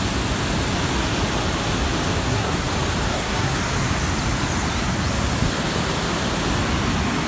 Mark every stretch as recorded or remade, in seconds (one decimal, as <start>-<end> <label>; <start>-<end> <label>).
0.0-2.2 recorded; 2.2-2.7 remade; 2.7-3.1 recorded; 3.1-3.6 remade; 3.6-7.3 recorded